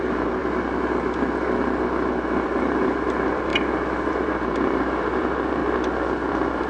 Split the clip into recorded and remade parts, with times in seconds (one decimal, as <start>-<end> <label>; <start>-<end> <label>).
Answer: 0.0-0.4 remade; 0.4-2.1 recorded; 2.1-3.5 remade; 3.5-4.1 recorded; 4.1-5.6 remade; 5.6-6.3 recorded; 6.3-6.7 remade